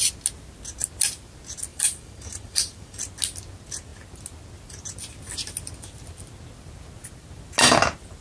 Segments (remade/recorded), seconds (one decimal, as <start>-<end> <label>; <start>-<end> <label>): 0.0-1.7 recorded; 1.7-3.0 remade; 3.0-8.2 recorded